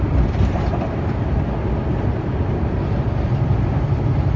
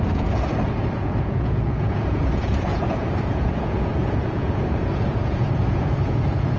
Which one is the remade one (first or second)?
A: second